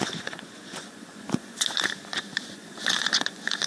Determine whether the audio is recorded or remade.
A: remade